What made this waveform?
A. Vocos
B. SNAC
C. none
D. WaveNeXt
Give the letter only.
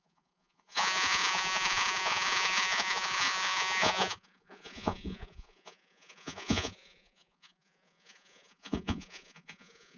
A